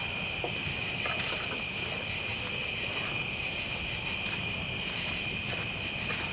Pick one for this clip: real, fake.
real